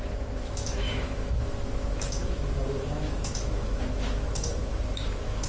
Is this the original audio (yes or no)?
no